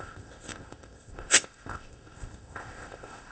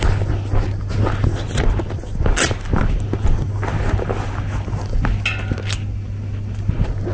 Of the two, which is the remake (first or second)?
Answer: first